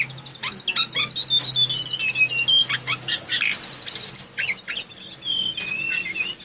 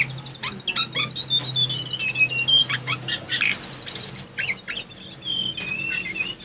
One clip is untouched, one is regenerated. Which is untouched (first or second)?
first